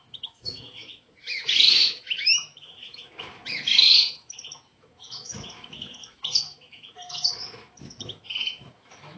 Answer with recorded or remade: remade